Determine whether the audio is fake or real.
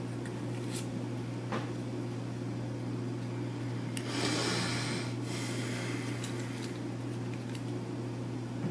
real